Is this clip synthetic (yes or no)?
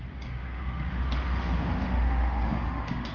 yes